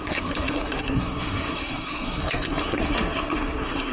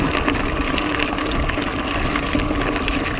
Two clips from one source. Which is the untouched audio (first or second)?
second